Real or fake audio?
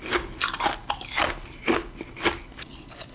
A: real